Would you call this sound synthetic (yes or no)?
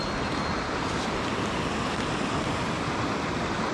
no